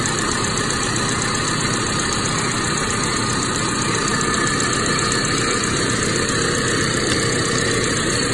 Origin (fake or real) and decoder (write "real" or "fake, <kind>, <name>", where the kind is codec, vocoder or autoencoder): fake, vocoder, BigVGAN v2